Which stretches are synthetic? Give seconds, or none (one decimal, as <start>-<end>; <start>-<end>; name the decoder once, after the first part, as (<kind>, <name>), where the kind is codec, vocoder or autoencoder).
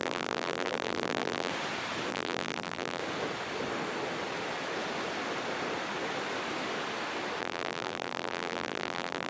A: 0.0-1.5 (vocoder, BigVGAN v2); 2.1-3.0; 7.4-9.3